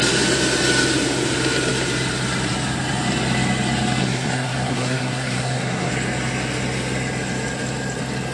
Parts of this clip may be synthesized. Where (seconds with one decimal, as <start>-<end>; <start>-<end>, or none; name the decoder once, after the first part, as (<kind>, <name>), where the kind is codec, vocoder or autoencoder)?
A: 4.0-5.9 (codec, SNAC)